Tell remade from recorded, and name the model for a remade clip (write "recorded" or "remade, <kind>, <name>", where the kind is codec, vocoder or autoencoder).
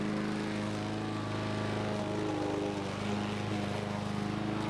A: recorded